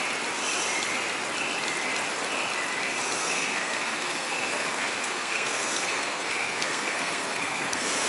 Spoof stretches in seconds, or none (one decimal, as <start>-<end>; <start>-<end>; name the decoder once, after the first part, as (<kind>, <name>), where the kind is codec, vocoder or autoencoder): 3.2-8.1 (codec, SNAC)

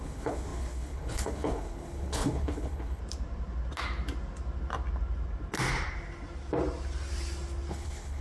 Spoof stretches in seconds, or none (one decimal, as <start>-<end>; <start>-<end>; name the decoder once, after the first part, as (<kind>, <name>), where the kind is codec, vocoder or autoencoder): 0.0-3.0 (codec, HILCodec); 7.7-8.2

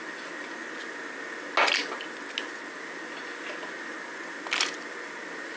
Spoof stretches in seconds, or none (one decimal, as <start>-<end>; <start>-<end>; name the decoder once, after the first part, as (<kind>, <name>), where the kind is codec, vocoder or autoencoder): none

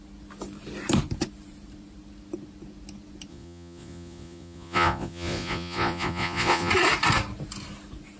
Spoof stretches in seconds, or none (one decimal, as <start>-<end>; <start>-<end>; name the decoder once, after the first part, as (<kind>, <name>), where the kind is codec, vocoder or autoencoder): 3.3-6.7 (vocoder, Vocos)